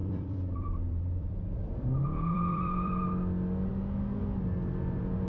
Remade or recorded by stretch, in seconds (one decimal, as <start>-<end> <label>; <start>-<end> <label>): 0.0-3.1 remade; 3.1-5.3 recorded